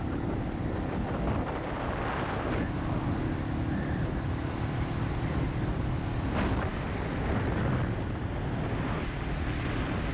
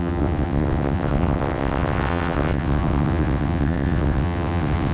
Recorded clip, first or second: first